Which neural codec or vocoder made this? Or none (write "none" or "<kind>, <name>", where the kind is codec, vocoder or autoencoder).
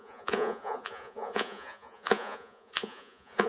vocoder, Vocos